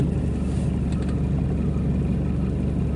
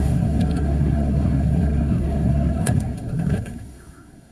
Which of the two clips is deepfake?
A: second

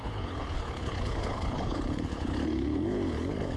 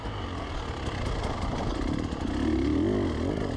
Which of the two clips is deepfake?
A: first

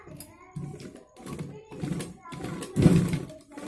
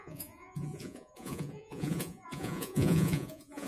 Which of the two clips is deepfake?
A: second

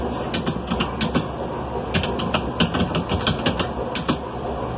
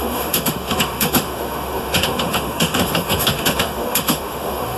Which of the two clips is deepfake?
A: second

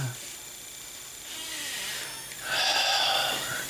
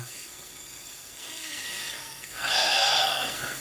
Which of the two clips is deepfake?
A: second